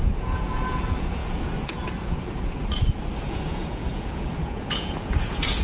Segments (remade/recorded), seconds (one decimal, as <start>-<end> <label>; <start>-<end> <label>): 0.0-2.6 remade; 2.6-3.2 recorded; 3.2-5.6 remade